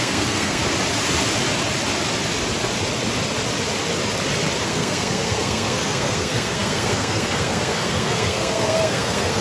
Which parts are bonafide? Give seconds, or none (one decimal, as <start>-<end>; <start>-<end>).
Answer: 0.6-4.6